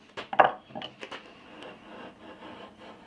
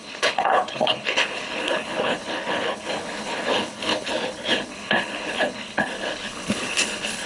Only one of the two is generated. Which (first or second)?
second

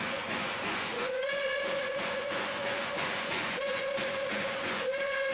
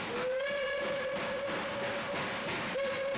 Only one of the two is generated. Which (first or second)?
first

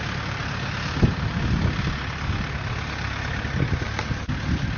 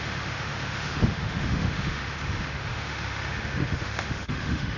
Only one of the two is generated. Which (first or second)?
second